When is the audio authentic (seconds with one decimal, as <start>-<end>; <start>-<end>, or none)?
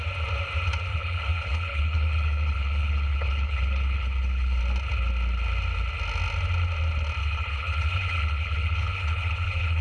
0.0-0.9; 4.6-7.2